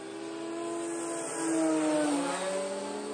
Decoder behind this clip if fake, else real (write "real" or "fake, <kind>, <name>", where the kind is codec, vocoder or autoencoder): real